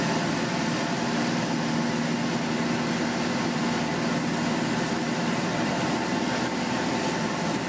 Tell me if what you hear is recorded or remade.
recorded